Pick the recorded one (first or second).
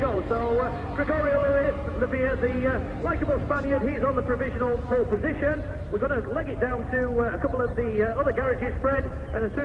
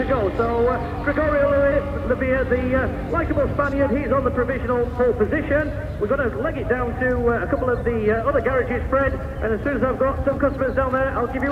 second